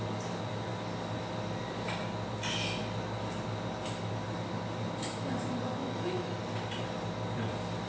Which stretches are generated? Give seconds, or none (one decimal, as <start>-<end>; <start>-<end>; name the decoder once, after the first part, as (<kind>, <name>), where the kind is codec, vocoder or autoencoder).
5.8-6.4 (autoencoder, DAC-VAE)